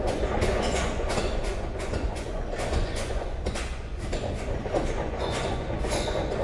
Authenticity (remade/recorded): remade